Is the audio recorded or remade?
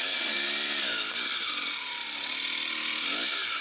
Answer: recorded